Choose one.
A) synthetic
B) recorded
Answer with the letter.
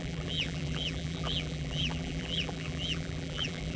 A